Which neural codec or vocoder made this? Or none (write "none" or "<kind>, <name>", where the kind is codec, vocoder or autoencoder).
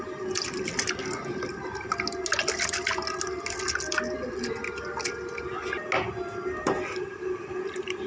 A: none